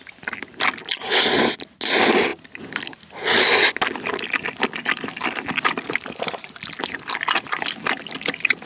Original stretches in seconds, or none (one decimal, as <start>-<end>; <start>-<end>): 0.0-8.7